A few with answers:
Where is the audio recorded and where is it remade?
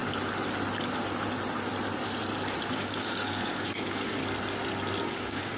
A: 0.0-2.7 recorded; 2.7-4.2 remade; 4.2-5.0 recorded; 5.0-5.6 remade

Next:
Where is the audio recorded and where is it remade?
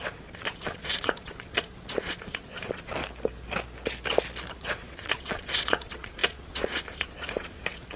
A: 0.0-3.0 remade; 3.0-4.5 recorded; 4.5-8.0 remade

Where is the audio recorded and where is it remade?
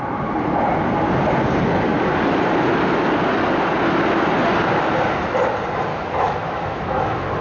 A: 0.0-5.9 recorded; 5.9-7.4 remade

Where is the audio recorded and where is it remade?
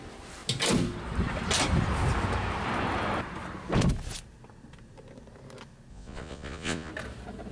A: 0.0-5.9 recorded; 5.9-6.9 remade; 6.9-7.5 recorded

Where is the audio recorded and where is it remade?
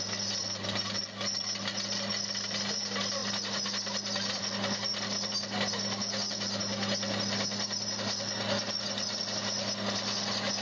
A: 0.0-10.6 recorded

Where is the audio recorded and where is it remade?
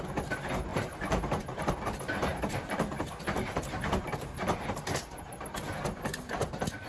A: 0.0-0.7 recorded; 0.7-1.7 remade; 1.7-2.3 recorded; 2.3-5.0 remade; 5.0-6.9 recorded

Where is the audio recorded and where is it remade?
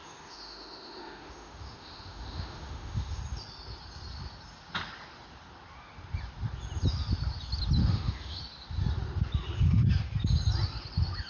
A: 0.0-3.2 remade; 3.2-7.8 recorded; 7.8-8.4 remade; 8.4-11.3 recorded